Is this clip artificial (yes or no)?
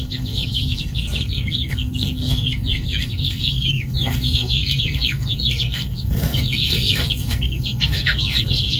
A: yes